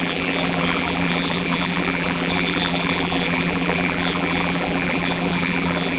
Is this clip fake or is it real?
fake